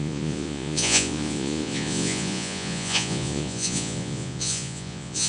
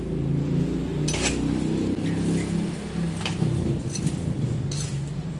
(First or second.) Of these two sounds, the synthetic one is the first